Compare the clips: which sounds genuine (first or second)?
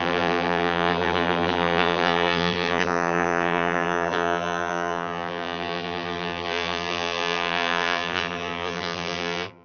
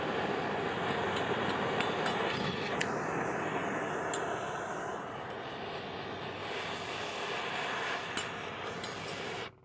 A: second